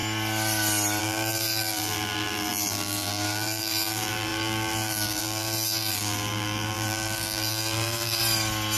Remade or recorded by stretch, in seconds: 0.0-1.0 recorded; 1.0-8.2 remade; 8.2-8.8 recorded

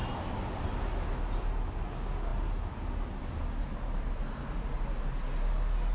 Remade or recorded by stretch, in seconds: 0.0-5.9 recorded

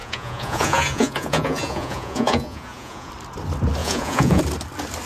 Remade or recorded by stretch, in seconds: 0.0-3.1 remade; 3.1-3.8 recorded; 3.8-4.4 remade; 4.4-5.1 recorded

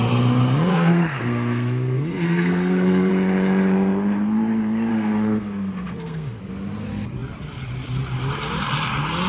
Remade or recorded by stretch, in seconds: 0.0-0.7 recorded; 0.7-3.1 remade; 3.1-4.9 recorded; 4.9-6.4 remade; 6.4-9.3 recorded

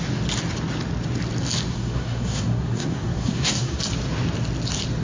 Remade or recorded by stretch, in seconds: 0.0-1.7 recorded; 1.7-3.8 remade; 3.8-5.0 recorded

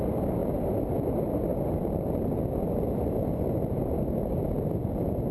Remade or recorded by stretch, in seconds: 0.0-5.3 recorded